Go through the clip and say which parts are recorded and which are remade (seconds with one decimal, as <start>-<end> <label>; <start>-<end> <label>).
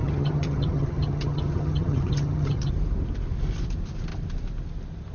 0.0-2.7 remade; 2.7-5.1 recorded